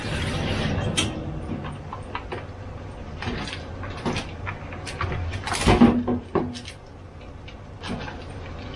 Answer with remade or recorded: recorded